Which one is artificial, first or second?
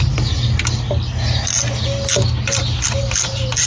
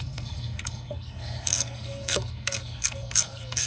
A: second